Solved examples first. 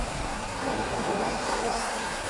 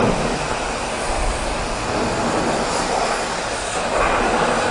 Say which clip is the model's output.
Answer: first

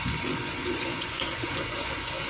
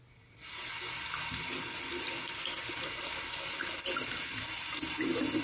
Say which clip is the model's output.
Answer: first